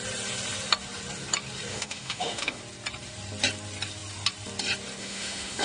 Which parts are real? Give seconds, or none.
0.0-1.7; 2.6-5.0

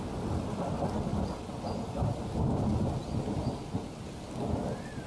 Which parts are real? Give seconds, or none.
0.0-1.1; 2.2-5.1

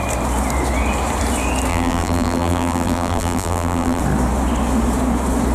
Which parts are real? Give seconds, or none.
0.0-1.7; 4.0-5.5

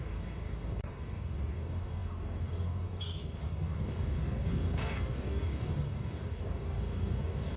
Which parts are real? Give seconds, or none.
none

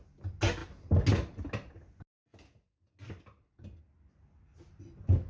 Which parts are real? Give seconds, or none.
0.0-5.3

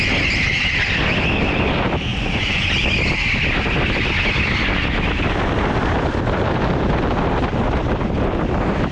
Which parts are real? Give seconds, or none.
0.0-2.1; 2.7-8.9

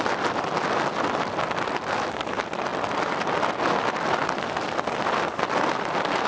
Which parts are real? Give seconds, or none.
0.0-6.3

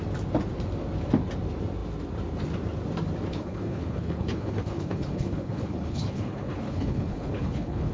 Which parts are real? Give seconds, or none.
0.0-3.3